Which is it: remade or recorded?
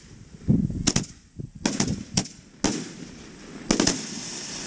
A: recorded